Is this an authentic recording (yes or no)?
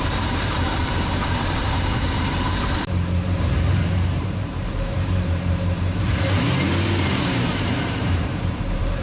no